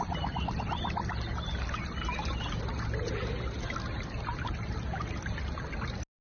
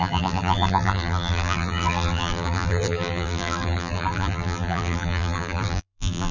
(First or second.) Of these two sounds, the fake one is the second